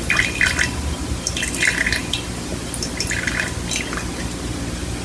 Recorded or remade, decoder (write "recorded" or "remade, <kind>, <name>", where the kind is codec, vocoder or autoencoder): recorded